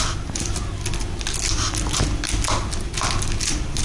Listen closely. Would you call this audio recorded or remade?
recorded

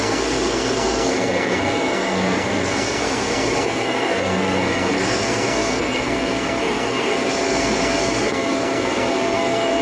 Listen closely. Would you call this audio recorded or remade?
remade